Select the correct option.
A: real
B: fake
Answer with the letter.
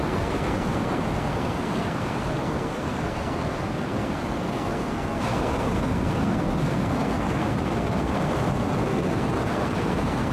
B